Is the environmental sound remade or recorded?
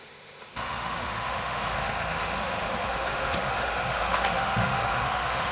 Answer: remade